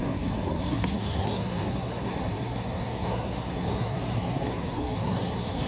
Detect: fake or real fake